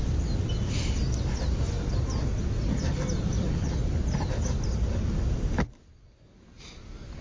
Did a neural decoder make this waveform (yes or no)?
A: no